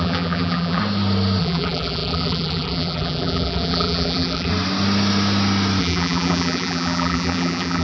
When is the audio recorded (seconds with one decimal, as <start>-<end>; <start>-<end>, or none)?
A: 0.8-1.4; 4.5-5.8